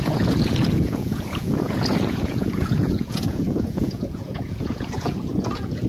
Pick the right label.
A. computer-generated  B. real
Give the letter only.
A